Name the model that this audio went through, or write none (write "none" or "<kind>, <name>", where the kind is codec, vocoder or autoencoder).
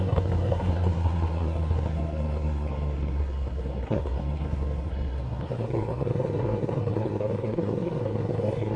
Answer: codec, SNAC